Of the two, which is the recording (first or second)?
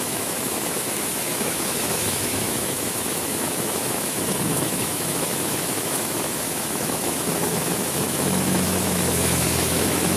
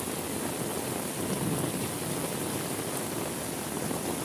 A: second